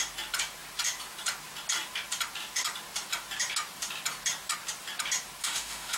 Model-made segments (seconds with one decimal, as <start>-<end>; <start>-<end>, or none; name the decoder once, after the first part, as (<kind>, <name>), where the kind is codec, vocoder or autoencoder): 5.4-6.0 (autoencoder, DAC-VAE)

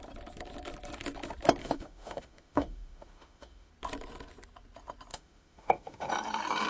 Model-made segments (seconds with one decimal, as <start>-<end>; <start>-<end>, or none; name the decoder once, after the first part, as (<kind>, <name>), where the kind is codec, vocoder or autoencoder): 1.6-3.7 (autoencoder, DAC-VAE); 5.1-6.1

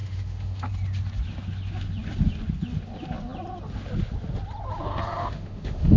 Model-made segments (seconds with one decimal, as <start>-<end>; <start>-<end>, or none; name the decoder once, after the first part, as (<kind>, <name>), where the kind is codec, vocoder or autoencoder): 0.0-0.7 (autoencoder, DAC-VAE); 5.2-6.0

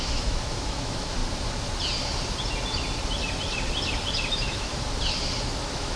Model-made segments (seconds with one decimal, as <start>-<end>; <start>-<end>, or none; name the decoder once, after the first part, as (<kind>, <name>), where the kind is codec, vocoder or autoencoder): 0.0-1.2 (autoencoder, DAC-VAE); 4.3-4.7; 5.6-6.0